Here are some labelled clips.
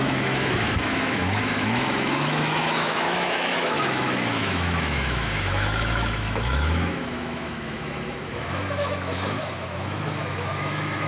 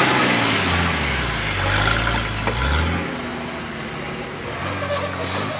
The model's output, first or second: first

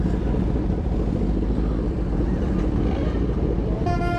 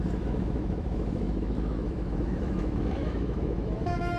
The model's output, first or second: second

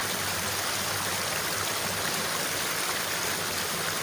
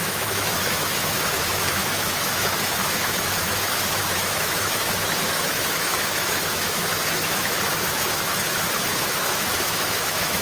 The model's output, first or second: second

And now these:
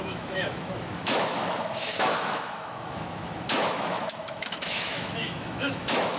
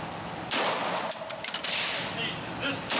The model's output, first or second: first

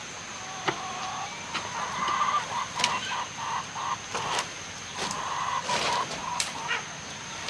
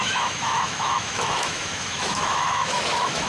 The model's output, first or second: second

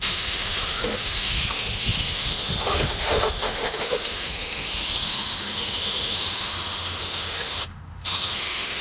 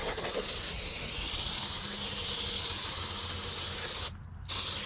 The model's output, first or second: first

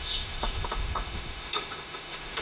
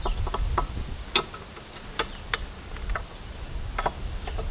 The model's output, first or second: first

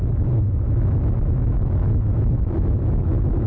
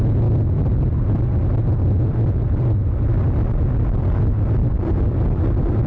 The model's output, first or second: first